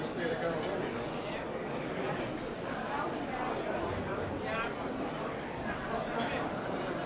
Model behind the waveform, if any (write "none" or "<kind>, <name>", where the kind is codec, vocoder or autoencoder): vocoder, BigVGAN v2